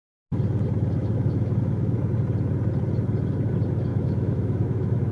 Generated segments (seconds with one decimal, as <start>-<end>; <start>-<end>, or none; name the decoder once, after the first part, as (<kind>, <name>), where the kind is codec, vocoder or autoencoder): 1.0-2.1 (autoencoder, DAC-VAE); 3.9-5.1